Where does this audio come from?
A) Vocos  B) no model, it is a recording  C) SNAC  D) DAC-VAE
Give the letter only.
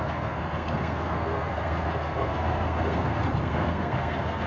C